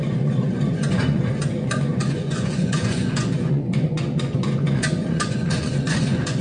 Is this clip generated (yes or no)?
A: yes